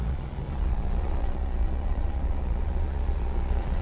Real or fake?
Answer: fake